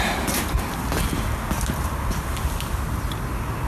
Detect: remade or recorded recorded